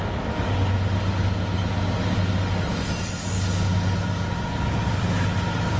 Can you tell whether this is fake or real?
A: real